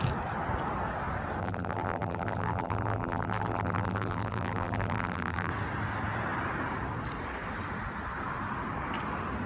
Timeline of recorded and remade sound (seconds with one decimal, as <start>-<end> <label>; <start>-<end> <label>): 0.0-1.4 recorded; 1.4-5.5 remade; 5.5-9.5 recorded

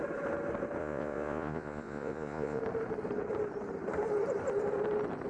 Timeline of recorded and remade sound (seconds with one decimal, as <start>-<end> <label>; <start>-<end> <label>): 0.0-0.8 recorded; 0.8-2.6 remade; 2.6-5.3 recorded

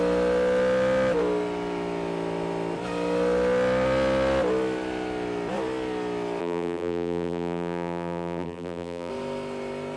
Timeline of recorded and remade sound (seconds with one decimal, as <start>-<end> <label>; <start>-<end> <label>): 0.0-6.4 recorded; 6.4-9.1 remade; 9.1-10.0 recorded

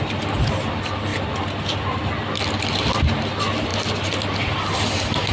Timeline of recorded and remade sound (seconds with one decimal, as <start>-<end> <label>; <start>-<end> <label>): 0.0-5.3 recorded